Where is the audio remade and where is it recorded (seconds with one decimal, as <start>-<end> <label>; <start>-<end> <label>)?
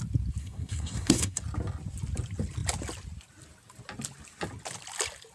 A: 0.0-0.4 recorded; 0.4-1.4 remade; 1.4-5.3 recorded